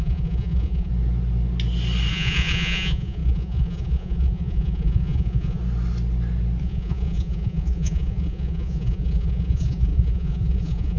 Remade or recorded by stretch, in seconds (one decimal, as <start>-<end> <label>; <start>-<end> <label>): 0.0-0.9 remade; 0.9-2.1 recorded; 2.1-5.6 remade; 5.6-6.6 recorded; 6.6-11.0 remade